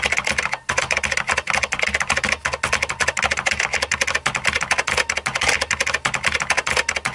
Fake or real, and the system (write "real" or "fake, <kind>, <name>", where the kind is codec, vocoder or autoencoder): real